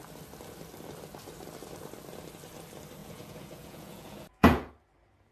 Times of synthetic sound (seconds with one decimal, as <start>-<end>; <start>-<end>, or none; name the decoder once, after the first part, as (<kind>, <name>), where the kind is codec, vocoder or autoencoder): 3.0-4.7 (vocoder, Vocos)